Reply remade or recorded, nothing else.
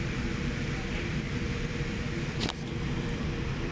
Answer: remade